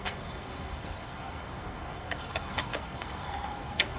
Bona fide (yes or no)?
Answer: no